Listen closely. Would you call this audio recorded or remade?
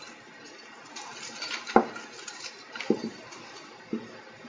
recorded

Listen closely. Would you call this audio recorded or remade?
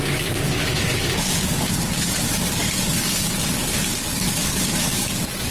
remade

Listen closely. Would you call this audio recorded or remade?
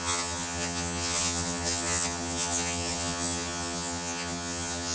remade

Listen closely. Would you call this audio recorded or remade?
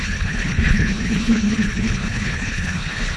remade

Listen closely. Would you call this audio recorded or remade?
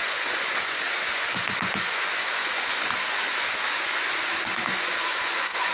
remade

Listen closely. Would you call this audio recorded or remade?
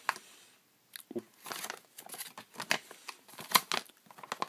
recorded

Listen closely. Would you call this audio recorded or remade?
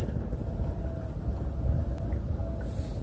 recorded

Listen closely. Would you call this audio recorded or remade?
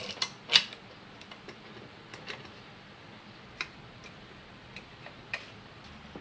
recorded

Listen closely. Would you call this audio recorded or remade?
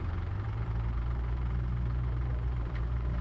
remade